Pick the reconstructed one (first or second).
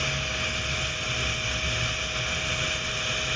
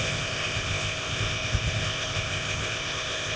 second